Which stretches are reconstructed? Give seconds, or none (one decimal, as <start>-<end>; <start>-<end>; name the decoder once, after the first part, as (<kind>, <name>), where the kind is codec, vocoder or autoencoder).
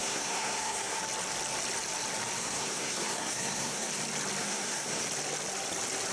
0.0-1.0 (codec, SNAC); 2.4-3.9; 4.4-5.0